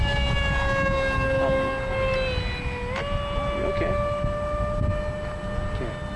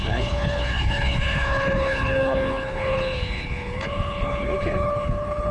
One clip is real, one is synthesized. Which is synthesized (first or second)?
second